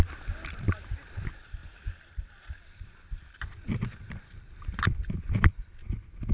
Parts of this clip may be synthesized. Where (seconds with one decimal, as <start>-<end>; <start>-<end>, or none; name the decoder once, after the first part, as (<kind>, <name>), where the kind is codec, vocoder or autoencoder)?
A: none